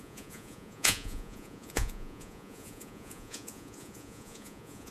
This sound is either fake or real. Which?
fake